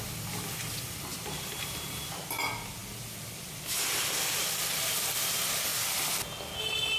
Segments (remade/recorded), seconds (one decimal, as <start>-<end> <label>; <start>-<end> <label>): 0.0-1.1 recorded; 1.1-2.0 remade; 2.0-7.0 recorded